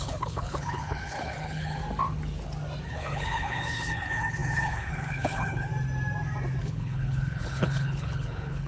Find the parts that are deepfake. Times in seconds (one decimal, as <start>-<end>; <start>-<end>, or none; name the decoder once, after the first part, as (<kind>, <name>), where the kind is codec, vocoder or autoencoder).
0.0-1.8 (codec, HILCodec); 2.9-5.7; 6.6-8.7